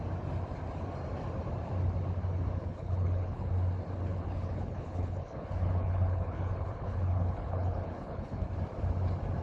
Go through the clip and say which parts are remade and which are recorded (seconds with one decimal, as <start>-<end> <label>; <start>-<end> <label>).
0.0-2.6 recorded; 2.6-3.5 remade; 3.5-4.1 recorded; 4.1-8.5 remade; 8.5-9.4 recorded